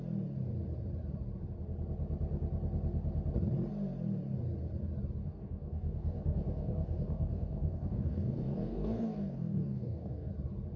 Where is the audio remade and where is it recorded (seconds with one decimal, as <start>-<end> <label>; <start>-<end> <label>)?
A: 0.0-5.2 recorded; 5.2-10.3 remade; 10.3-10.8 recorded